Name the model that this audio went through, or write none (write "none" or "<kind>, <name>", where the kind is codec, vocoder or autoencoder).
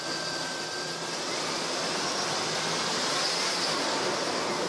none